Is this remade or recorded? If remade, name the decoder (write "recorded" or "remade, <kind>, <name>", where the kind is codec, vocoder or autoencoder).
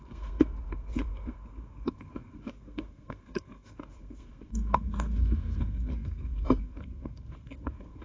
remade, codec, SNAC